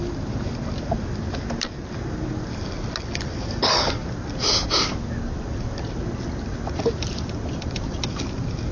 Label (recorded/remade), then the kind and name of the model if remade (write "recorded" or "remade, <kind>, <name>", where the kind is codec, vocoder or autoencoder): recorded